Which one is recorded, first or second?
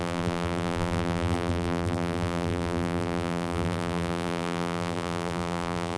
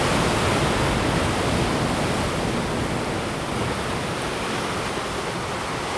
second